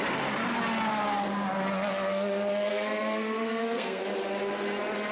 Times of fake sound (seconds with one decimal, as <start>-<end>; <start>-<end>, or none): 2.7-4.0